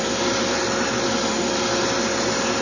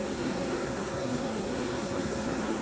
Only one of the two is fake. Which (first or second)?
second